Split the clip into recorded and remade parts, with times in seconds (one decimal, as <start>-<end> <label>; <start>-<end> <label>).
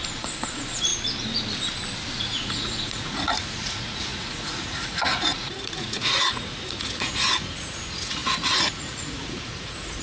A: 0.0-0.9 remade; 0.9-2.2 recorded; 2.2-10.0 remade